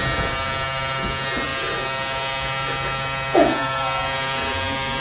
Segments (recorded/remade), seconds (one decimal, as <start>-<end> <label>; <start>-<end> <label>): 0.0-5.0 recorded